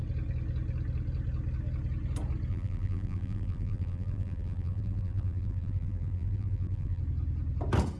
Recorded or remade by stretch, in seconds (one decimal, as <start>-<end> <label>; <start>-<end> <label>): 0.0-2.5 recorded; 2.5-7.0 remade; 7.0-8.0 recorded